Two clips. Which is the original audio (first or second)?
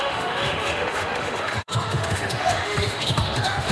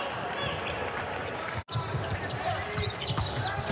second